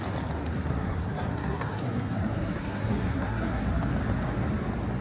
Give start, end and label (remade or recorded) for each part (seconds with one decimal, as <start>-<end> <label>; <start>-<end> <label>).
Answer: 0.0-0.7 recorded; 0.7-3.7 remade; 3.7-5.0 recorded